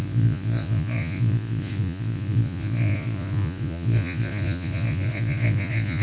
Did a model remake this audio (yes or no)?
yes